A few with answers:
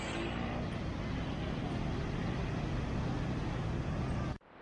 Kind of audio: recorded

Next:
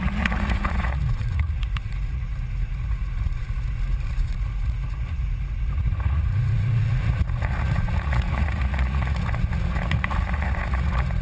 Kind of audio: remade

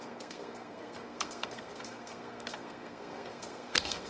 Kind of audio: remade